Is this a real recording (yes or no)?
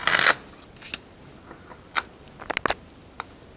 yes